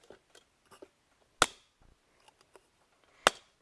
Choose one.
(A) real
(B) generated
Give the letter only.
A